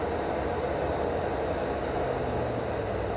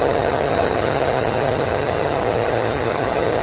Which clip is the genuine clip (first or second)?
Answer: first